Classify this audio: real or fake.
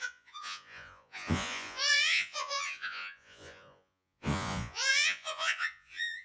fake